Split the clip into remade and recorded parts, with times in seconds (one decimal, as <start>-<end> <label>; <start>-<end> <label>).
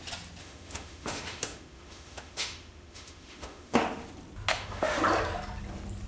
0.0-0.4 recorded; 0.4-3.8 remade; 3.8-4.5 recorded; 4.5-5.0 remade; 5.0-6.1 recorded